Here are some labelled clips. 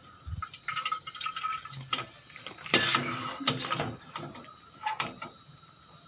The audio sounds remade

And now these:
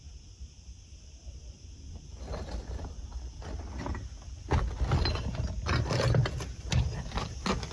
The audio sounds recorded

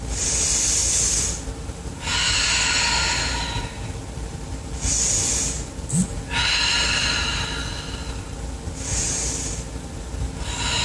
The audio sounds recorded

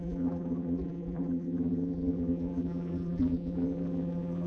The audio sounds remade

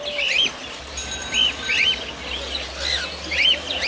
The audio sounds recorded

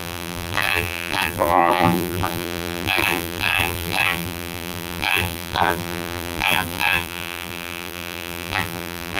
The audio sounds remade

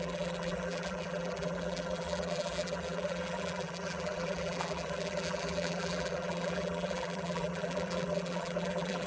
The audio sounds remade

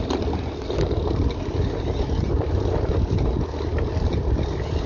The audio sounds recorded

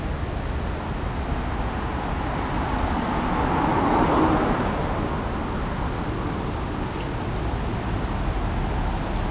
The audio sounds recorded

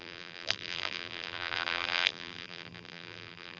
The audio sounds remade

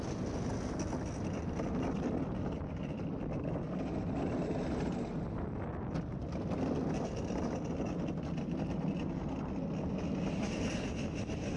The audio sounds recorded